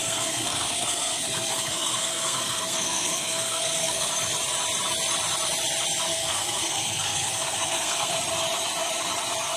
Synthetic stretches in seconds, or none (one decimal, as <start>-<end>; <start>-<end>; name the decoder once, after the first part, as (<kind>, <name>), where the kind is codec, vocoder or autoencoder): 0.0-4.1 (codec, SNAC); 6.1-8.1